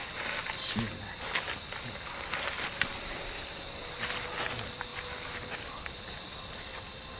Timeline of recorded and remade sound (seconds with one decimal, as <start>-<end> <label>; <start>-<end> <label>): 0.0-7.2 recorded

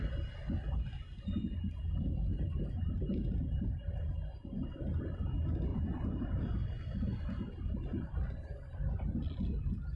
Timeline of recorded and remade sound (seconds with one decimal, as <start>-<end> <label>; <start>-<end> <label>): 0.0-2.3 recorded; 2.3-4.0 remade; 4.0-5.7 recorded; 5.7-6.5 remade; 6.5-10.0 recorded

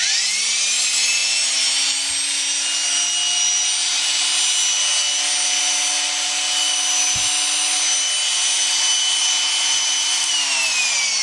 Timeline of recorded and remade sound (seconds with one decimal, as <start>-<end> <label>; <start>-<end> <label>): 0.0-10.0 recorded; 10.0-10.7 remade; 10.7-11.2 recorded

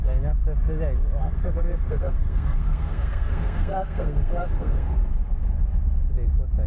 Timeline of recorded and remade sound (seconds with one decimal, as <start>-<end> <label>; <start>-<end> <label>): 0.0-1.2 recorded; 1.2-5.1 remade; 5.1-6.7 recorded

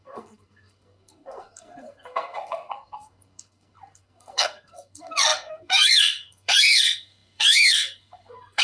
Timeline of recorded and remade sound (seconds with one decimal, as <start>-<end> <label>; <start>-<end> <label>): 0.0-8.6 remade